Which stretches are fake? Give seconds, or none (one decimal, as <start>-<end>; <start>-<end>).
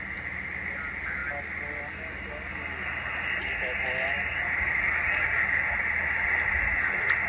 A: none